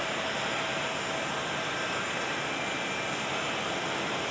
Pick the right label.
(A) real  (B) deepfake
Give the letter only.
A